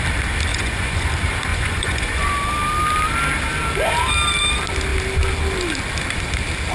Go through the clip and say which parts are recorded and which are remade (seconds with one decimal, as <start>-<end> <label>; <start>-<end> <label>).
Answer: 0.0-0.5 recorded; 0.5-1.1 remade; 1.1-1.5 recorded; 1.5-2.5 remade; 2.5-6.7 recorded